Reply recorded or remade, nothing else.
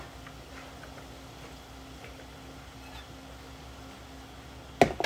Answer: recorded